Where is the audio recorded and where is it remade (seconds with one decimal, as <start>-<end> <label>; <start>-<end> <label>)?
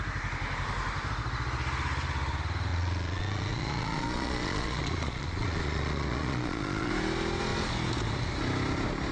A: 0.0-2.7 recorded; 2.7-6.9 remade; 6.9-9.1 recorded